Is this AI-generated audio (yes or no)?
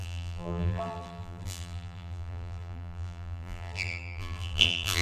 yes